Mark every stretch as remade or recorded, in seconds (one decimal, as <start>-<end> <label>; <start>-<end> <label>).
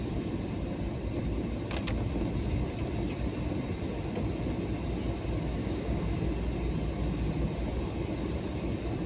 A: 0.0-5.6 recorded; 5.6-6.2 remade; 6.2-9.1 recorded